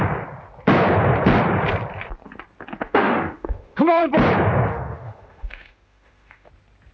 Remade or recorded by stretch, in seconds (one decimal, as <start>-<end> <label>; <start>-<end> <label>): 0.0-2.8 recorded; 2.8-4.0 remade; 4.0-4.7 recorded; 4.7-6.5 remade; 6.5-6.9 recorded